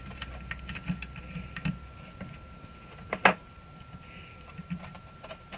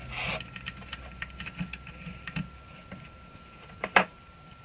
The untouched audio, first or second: first